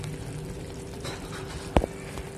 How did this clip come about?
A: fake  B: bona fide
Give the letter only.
A